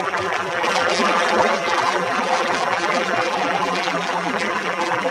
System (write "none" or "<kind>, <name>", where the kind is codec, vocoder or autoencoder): vocoder, BigVGAN v2